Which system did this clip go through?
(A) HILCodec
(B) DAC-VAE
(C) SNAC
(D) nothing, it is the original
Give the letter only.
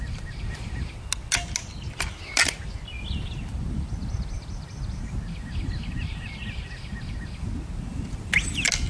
D